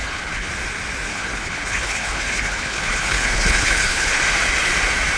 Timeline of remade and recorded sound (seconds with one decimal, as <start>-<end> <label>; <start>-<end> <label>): 0.0-0.5 remade; 0.5-1.1 recorded; 1.1-4.2 remade; 4.2-5.2 recorded